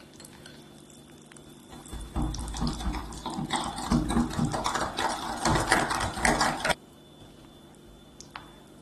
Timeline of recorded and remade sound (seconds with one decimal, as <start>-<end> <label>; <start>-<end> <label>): 0.0-8.8 recorded